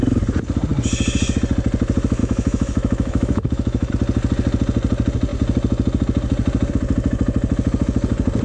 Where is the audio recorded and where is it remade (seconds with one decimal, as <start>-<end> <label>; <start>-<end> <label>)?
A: 0.0-2.2 recorded; 2.2-3.9 remade; 3.9-8.4 recorded